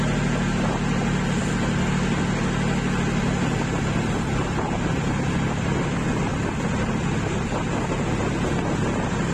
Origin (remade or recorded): recorded